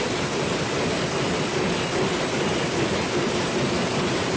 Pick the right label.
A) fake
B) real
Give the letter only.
B